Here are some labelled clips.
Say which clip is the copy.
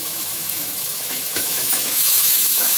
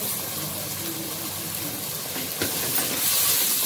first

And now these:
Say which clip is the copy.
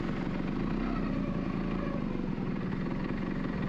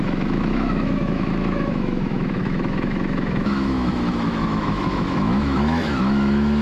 second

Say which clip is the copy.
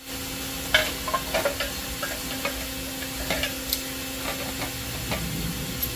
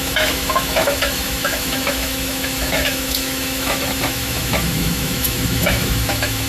second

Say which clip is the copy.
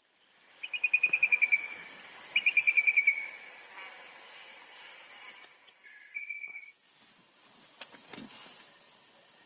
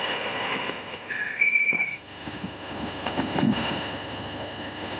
second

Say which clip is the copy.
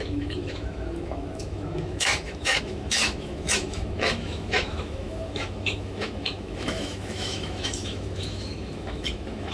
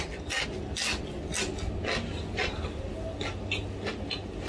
first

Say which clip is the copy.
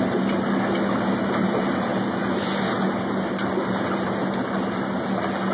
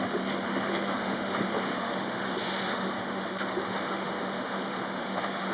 second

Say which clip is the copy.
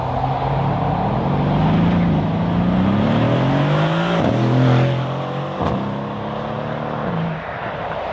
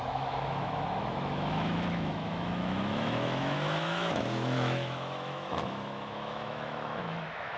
second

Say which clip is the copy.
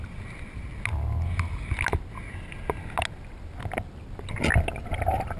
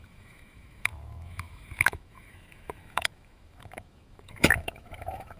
second